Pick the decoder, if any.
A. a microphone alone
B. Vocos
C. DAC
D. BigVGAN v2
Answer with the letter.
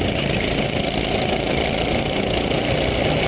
A